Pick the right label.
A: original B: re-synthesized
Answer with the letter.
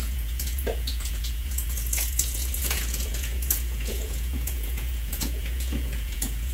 B